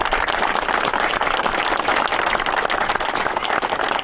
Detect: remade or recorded recorded